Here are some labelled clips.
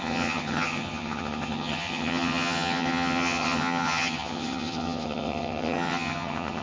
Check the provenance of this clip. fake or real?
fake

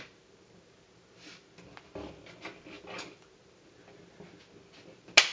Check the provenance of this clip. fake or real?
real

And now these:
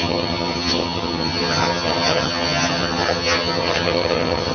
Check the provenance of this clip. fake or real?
fake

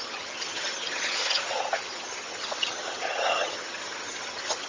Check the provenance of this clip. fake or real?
fake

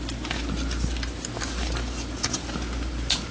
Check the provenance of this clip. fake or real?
real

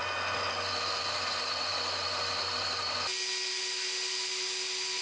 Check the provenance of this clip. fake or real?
real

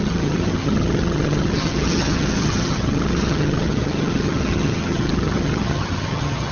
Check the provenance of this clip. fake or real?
fake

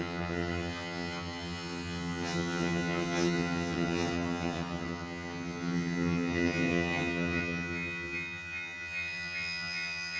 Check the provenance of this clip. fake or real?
fake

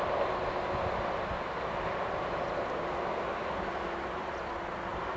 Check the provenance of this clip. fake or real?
real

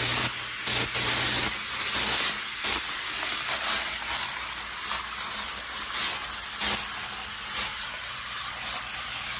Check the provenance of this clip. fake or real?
real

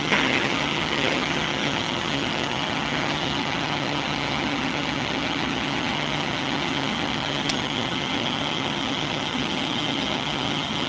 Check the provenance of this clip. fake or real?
fake